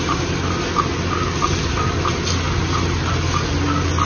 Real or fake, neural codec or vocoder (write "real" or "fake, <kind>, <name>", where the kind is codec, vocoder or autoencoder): real